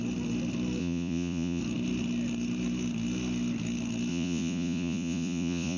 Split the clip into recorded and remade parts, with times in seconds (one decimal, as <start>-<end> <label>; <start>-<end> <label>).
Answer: 0.0-0.8 recorded; 0.8-1.6 remade; 1.6-4.1 recorded; 4.1-5.8 remade